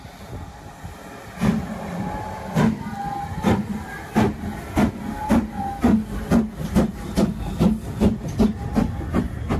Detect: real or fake real